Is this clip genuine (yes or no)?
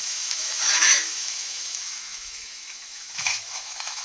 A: no